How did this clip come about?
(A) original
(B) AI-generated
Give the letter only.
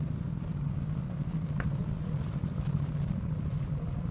B